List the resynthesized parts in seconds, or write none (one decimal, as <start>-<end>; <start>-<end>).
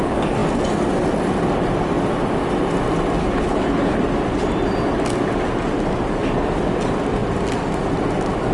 3.2-4.0